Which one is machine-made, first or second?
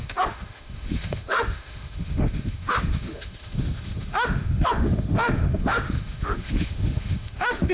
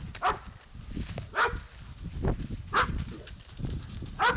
first